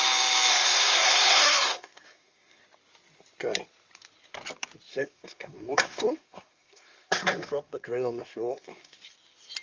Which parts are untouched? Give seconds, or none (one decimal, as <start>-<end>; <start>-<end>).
0.0-0.5; 2.6-4.9; 9.0-9.6